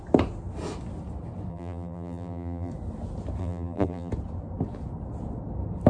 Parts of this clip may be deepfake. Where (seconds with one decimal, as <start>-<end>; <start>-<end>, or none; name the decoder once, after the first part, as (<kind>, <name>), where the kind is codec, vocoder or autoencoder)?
1.5-2.7 (vocoder, BigVGAN v2); 3.4-4.1